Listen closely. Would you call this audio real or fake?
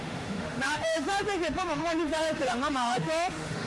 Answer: fake